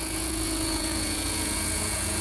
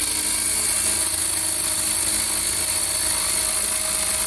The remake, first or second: first